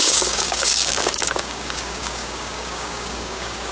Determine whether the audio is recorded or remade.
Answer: remade